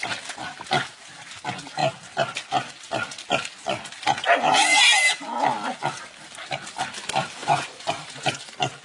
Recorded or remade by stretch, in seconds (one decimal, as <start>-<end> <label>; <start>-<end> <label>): 0.0-7.4 recorded; 7.4-8.3 remade; 8.3-8.8 recorded